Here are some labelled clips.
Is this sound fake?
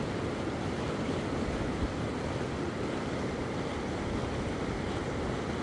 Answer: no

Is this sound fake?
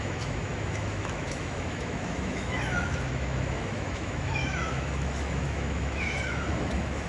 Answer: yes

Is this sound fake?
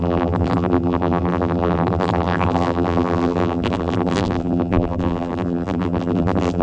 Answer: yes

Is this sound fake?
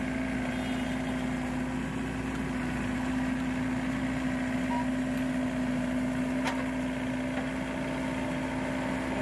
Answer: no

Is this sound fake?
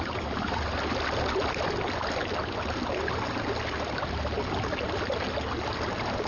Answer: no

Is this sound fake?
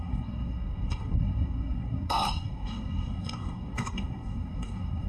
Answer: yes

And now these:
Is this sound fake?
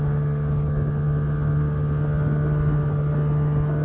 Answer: no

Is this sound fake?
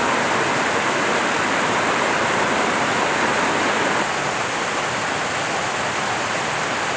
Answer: no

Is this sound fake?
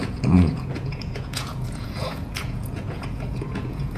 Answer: yes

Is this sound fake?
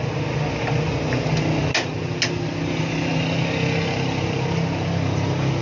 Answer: no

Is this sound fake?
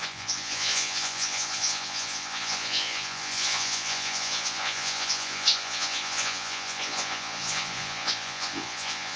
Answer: yes